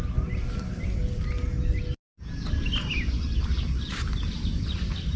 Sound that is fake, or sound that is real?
real